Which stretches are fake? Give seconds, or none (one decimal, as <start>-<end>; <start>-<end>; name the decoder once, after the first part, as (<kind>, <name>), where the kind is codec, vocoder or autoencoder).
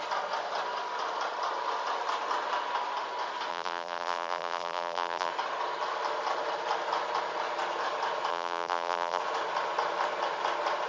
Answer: 3.5-5.3 (vocoder, BigVGAN v2); 8.3-9.2